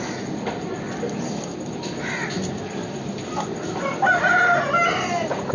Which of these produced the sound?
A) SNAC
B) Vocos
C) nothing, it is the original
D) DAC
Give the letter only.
C